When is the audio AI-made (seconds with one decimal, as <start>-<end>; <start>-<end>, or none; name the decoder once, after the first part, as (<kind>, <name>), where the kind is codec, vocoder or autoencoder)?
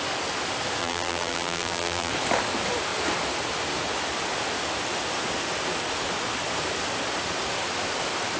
0.8-2.1 (vocoder, BigVGAN v2)